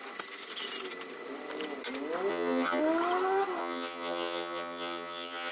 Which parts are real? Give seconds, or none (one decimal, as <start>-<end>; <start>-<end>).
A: 0.0-2.3; 2.8-3.6